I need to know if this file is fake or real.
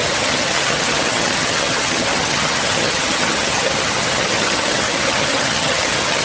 fake